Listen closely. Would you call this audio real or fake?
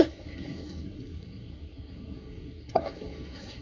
fake